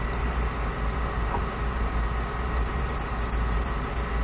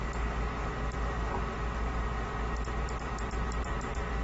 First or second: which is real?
second